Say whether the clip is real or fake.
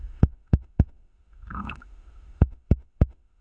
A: fake